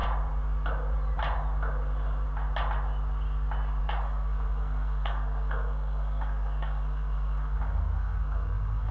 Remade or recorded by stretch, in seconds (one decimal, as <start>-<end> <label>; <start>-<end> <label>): 0.0-3.8 recorded; 3.8-8.9 remade